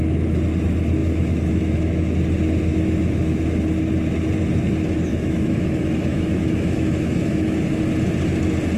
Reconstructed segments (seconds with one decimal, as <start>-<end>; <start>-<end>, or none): 1.0-2.1; 2.7-3.6; 5.1-7.7